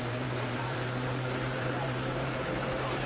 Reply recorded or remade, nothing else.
remade